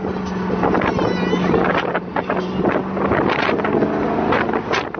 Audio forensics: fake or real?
real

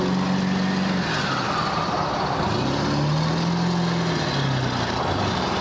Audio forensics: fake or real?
real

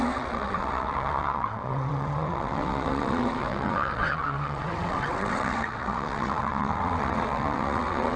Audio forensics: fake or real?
fake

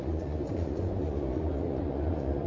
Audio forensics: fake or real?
fake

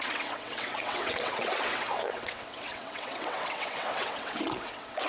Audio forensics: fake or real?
fake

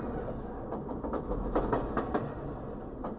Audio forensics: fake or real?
real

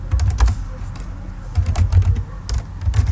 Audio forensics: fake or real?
real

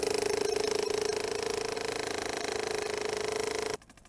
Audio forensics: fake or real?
real